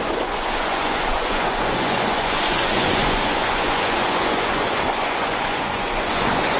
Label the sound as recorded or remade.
remade